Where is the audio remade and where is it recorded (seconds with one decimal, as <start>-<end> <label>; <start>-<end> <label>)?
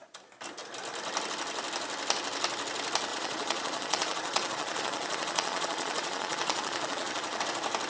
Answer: 0.0-3.1 recorded; 3.1-7.4 remade; 7.4-7.9 recorded